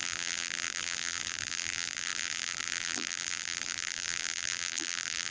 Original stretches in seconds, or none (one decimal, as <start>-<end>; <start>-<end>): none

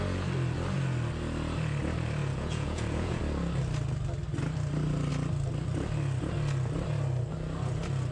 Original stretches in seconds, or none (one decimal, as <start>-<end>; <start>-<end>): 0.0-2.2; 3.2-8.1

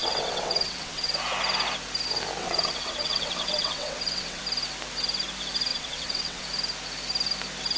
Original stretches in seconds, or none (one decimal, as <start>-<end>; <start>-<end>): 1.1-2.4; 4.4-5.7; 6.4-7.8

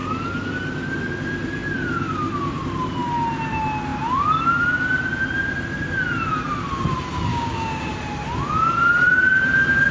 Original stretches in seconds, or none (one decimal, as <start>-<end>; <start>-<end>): 0.0-7.3; 7.9-9.9

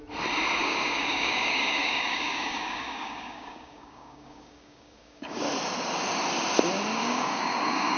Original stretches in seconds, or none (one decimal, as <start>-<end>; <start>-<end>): 0.0-0.6; 5.4-7.0